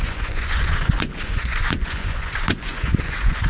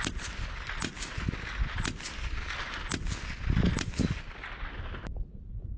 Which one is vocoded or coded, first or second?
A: first